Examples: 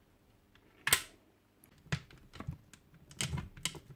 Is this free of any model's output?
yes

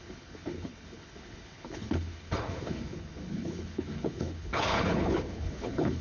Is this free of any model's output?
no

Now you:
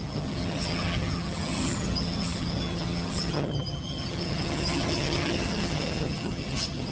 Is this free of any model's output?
no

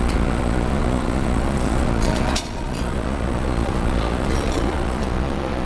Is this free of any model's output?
no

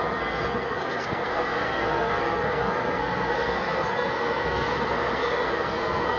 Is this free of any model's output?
no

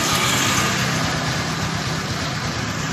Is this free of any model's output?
yes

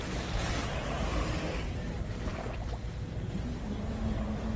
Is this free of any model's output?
yes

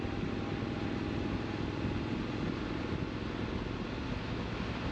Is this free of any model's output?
yes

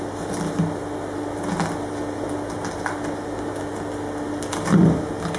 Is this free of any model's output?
yes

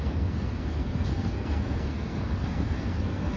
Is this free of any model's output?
no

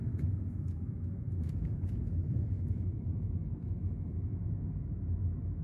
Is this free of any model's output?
no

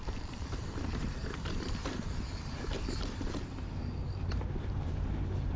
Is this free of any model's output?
no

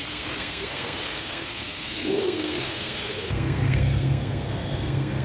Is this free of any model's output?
no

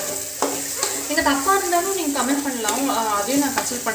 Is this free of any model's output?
yes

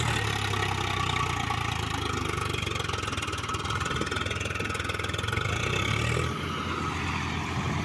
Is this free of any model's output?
yes